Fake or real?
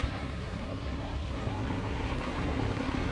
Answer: fake